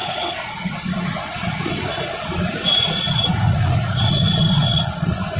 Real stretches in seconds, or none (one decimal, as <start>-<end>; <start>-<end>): none

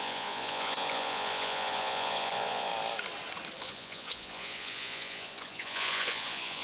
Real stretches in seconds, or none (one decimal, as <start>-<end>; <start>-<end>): 2.7-3.6

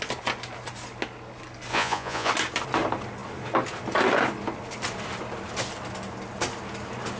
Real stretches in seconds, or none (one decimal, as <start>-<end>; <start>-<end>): 0.0-1.7; 2.3-7.2

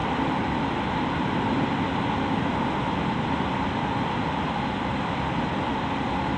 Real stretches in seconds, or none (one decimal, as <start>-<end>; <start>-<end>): 0.0-6.4

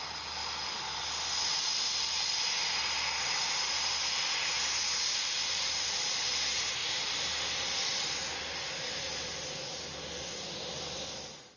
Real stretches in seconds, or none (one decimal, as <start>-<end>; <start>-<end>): 0.0-11.6

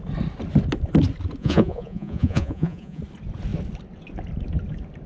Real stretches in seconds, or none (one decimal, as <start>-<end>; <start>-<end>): 0.0-1.4; 3.0-5.1